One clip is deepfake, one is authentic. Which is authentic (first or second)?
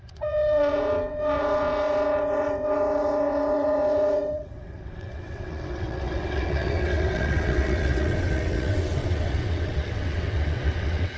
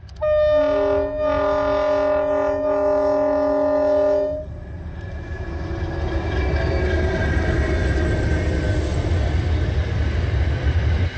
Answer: second